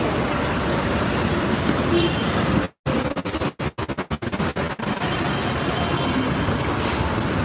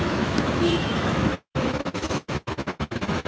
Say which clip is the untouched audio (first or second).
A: first